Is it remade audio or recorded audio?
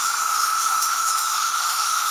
remade